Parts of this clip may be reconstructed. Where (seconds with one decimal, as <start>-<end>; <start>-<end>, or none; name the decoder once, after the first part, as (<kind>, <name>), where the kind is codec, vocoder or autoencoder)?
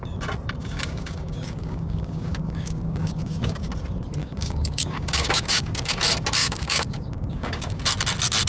0.6-3.7 (codec, DAC); 4.2-6.0; 6.4-7.8